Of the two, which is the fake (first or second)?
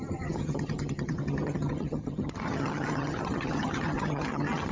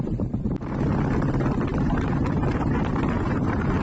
first